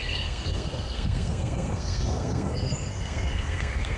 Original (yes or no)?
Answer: no